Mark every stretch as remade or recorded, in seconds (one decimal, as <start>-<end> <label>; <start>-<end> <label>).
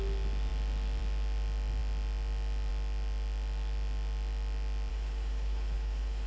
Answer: 0.0-4.9 recorded; 4.9-6.3 remade